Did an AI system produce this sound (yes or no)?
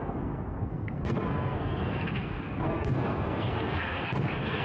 yes